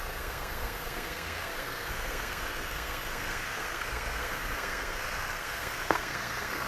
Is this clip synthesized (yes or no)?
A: yes